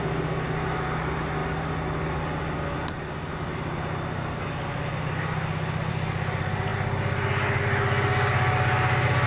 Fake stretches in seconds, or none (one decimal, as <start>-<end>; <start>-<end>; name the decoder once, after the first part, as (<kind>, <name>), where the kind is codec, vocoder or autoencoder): none